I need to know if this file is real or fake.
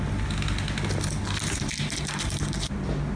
real